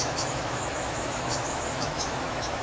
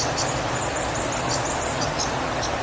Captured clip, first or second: second